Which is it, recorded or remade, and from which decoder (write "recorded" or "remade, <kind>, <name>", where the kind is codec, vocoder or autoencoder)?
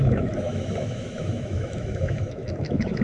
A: remade, autoencoder, DAC-VAE